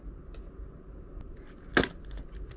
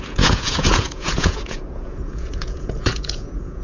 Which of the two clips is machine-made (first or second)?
second